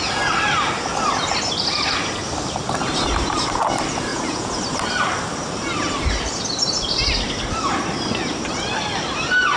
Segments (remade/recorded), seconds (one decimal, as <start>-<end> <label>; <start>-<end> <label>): 0.0-4.1 recorded; 4.1-4.6 remade; 4.6-9.6 recorded